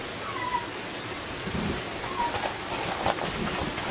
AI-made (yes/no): no